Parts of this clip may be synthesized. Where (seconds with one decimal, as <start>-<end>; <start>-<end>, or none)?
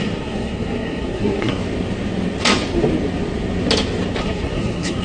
0.0-1.6; 4.2-5.0